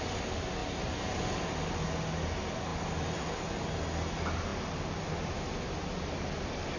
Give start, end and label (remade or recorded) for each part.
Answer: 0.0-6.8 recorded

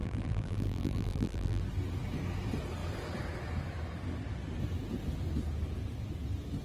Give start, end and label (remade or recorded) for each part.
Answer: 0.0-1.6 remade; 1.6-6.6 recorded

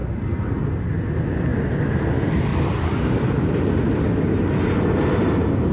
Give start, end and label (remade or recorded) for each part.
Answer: 0.0-1.5 recorded; 1.5-2.1 remade; 2.1-2.5 recorded; 2.5-4.0 remade; 4.0-5.7 recorded

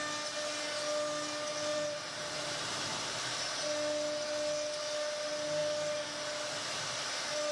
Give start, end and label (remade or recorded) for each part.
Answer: 0.0-1.7 recorded; 1.7-3.6 remade; 3.6-7.5 recorded